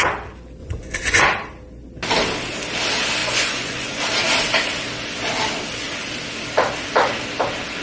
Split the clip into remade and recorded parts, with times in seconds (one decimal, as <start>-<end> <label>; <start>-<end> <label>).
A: 0.0-0.6 recorded; 0.6-1.2 remade; 1.2-3.2 recorded; 3.2-4.0 remade; 4.0-7.8 recorded